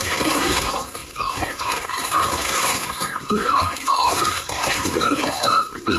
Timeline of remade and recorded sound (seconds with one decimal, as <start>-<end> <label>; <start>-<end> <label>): 0.0-6.0 remade